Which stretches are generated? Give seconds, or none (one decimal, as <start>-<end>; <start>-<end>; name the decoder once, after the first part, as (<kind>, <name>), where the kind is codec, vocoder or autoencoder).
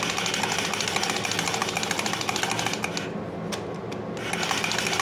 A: none